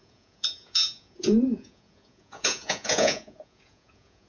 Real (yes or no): no